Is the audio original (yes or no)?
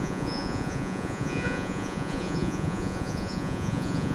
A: no